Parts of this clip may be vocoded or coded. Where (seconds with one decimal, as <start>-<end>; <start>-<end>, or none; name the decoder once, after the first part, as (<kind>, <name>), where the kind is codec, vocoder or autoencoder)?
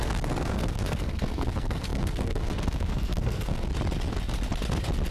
0.0-3.7 (codec, SNAC)